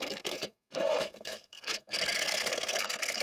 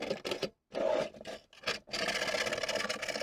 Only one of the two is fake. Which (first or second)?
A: first